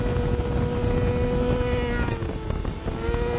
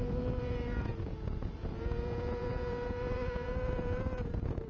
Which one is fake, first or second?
second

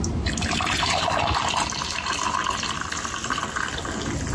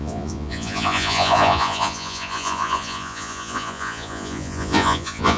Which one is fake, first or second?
second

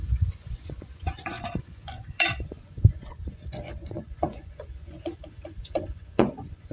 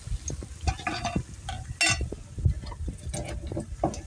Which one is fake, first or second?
first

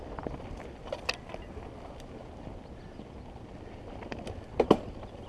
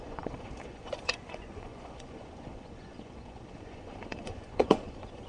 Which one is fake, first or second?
second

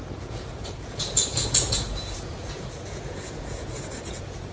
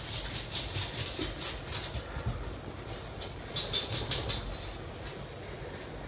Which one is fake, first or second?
first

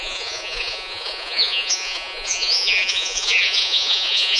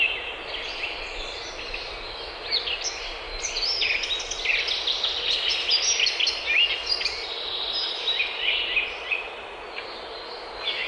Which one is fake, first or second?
first